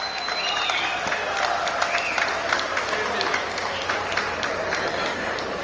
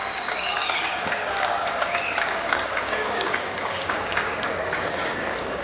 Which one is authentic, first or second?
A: first